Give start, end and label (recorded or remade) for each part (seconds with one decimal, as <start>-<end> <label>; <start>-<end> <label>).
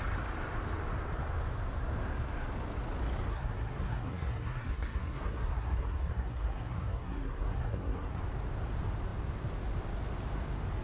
0.0-3.3 recorded; 3.3-8.2 remade; 8.2-10.8 recorded